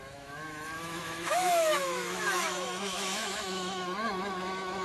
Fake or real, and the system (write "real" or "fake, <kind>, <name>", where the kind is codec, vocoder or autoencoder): fake, autoencoder, DAC-VAE